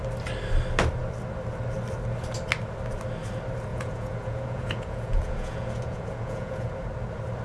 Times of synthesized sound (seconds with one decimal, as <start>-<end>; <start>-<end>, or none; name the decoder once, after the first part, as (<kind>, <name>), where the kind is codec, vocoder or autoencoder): 3.7-6.7 (vocoder, Vocos)